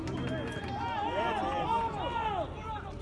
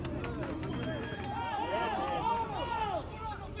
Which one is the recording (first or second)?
first